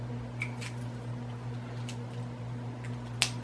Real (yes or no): yes